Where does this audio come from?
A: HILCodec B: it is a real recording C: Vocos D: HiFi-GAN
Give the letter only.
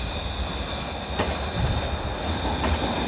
B